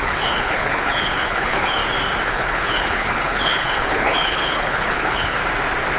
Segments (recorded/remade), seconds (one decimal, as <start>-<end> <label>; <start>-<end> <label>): 0.0-1.8 remade; 1.8-2.3 recorded; 2.3-5.4 remade; 5.4-6.0 recorded